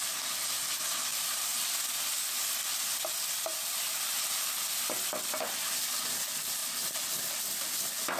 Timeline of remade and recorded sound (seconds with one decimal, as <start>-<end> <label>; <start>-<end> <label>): 0.0-1.1 recorded; 1.1-1.7 remade; 1.7-3.5 recorded; 3.5-4.0 remade; 4.0-8.2 recorded